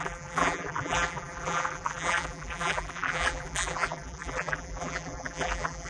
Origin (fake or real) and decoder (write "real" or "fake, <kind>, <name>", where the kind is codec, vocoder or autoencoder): fake, vocoder, BigVGAN v2